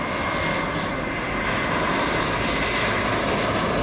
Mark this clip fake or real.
real